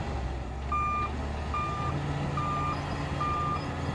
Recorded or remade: recorded